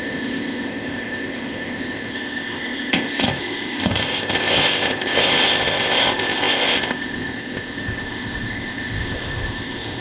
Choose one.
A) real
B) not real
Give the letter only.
B